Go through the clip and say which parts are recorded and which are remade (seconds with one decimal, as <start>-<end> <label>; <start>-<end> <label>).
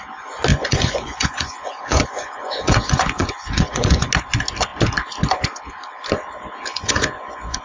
0.0-0.5 recorded; 0.5-4.1 remade; 4.1-6.7 recorded; 6.7-7.6 remade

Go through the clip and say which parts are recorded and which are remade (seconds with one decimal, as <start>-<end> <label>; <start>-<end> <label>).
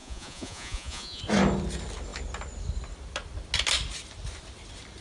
0.0-1.2 remade; 1.2-5.0 recorded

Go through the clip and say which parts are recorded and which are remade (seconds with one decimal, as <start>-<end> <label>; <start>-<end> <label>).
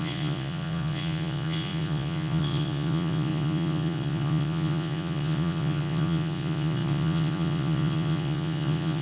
0.0-9.0 remade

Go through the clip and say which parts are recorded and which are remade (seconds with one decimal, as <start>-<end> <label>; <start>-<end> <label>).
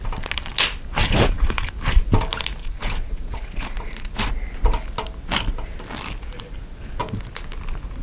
0.0-1.0 recorded; 1.0-1.7 remade; 1.7-2.6 recorded; 2.6-4.3 remade; 4.3-8.0 recorded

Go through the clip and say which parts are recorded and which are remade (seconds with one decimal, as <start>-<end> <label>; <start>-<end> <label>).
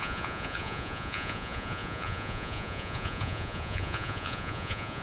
0.0-5.0 remade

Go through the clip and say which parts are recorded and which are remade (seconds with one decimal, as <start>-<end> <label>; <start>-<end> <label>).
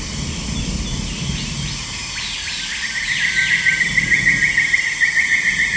0.0-5.8 recorded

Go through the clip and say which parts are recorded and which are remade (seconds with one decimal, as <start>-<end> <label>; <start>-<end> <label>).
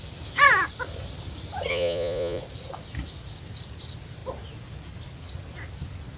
0.0-1.7 recorded; 1.7-2.4 remade; 2.4-6.2 recorded